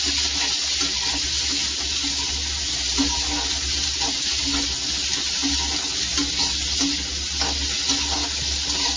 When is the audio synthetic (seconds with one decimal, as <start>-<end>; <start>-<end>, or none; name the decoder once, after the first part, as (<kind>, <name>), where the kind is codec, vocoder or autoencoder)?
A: none